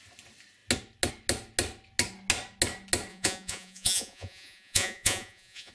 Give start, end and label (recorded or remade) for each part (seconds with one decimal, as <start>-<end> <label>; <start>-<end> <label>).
0.0-3.1 recorded; 3.1-5.7 remade